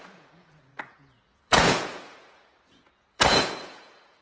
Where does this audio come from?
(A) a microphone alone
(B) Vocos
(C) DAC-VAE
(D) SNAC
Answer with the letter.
B